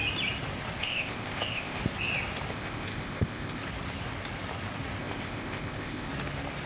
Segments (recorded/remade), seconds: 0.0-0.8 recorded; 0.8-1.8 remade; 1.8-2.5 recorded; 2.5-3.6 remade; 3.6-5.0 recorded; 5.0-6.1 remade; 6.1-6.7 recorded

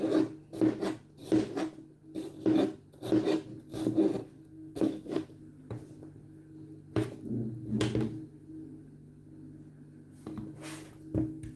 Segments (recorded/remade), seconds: 0.0-4.2 recorded; 4.2-5.4 remade; 5.4-11.6 recorded

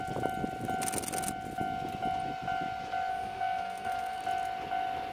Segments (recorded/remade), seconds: 0.0-3.1 recorded; 3.1-4.2 remade; 4.2-5.1 recorded